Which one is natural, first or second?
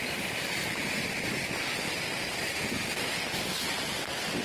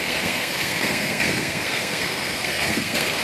first